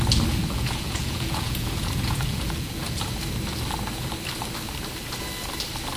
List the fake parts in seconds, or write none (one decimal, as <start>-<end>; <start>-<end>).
0.4-3.0